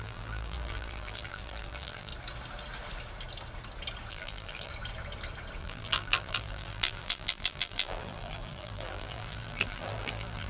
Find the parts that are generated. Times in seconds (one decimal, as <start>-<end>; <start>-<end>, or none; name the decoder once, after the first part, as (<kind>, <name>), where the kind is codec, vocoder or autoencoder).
0.0-2.1 (vocoder, BigVGAN v2); 4.1-4.7; 5.6-10.5